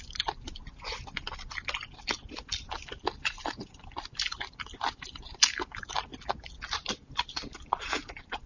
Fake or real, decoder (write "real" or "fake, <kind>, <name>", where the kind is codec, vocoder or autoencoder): real